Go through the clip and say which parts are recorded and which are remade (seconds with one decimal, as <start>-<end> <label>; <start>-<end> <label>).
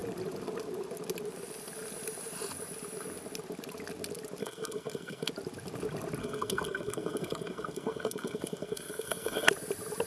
0.0-4.4 recorded; 4.4-5.3 remade; 5.3-6.2 recorded; 6.2-9.5 remade; 9.5-10.1 recorded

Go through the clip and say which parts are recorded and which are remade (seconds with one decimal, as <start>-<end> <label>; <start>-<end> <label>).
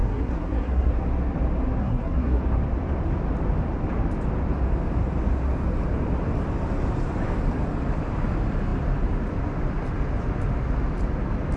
0.0-0.9 remade; 0.9-1.8 recorded; 1.8-2.4 remade; 2.4-11.6 recorded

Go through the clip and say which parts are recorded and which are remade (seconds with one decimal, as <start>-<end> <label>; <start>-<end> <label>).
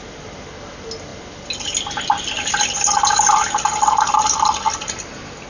0.0-5.5 recorded